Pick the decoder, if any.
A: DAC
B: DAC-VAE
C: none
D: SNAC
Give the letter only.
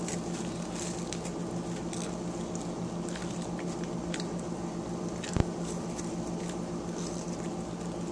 C